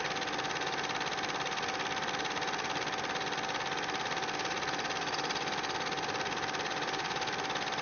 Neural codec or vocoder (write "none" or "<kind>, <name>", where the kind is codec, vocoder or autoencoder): none